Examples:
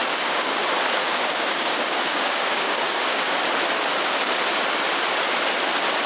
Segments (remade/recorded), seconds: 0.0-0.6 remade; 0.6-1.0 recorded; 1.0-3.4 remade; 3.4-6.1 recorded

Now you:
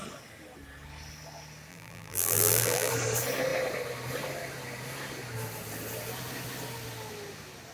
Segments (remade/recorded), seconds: 0.0-1.7 recorded; 1.7-2.9 remade; 2.9-7.7 recorded

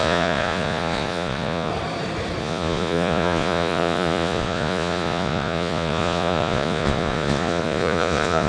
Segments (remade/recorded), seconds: 0.0-1.7 remade; 1.7-2.4 recorded; 2.4-8.5 remade